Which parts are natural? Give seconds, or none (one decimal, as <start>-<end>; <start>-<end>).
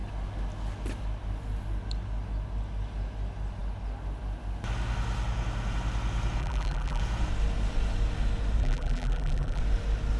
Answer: 0.0-6.4; 7.0-8.6; 9.6-10.2